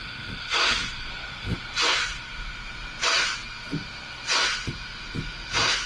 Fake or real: real